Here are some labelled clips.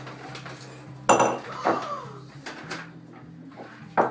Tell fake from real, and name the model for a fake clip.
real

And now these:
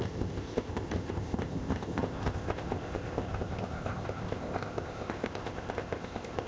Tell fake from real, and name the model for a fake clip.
fake, codec, ZipCodec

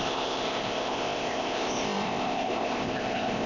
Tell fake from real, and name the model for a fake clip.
fake, codec, ZipCodec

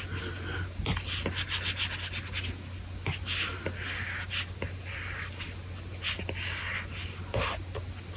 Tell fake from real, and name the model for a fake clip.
real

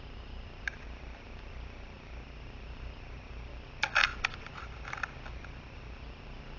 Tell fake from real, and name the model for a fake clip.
real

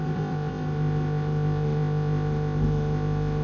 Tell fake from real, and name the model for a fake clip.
fake, codec, ZipCodec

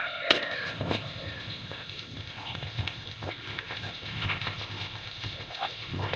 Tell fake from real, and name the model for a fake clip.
fake, codec, ZipCodec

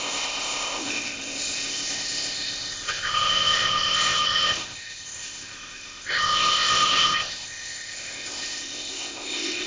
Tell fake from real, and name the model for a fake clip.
fake, codec, ZipCodec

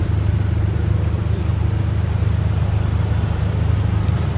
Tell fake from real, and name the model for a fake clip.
real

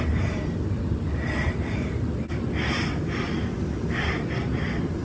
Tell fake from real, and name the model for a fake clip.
real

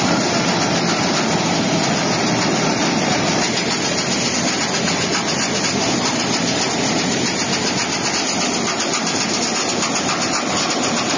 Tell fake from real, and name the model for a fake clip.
real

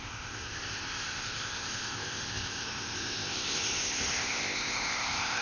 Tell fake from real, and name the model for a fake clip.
fake, codec, ZipCodec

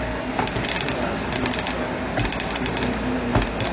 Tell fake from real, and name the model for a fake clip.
real